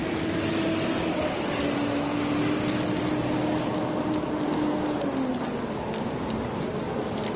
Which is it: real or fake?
real